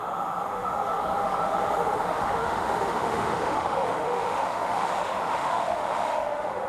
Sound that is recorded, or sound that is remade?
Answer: remade